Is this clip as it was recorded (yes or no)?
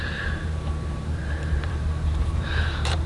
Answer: no